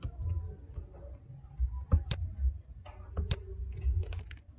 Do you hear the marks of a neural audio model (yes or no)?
no